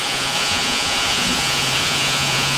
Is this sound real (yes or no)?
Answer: no